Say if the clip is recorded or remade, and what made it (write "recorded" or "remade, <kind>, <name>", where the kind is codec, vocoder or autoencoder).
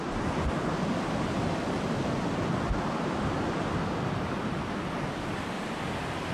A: recorded